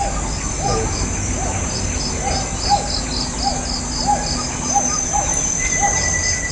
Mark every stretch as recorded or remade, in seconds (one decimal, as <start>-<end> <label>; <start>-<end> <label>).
0.0-6.5 recorded